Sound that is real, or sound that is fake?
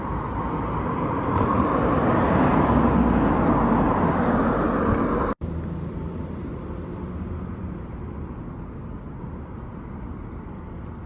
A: real